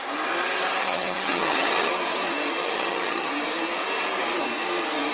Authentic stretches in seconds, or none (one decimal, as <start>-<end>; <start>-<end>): 0.0-0.8; 1.9-2.6; 3.3-5.1